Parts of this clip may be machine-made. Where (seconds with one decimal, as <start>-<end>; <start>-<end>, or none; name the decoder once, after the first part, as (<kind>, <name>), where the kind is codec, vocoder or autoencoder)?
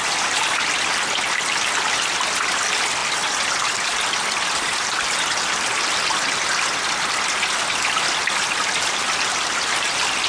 none